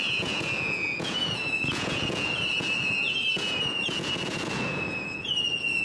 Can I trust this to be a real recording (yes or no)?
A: no